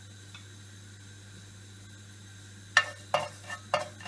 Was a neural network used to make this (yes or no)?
no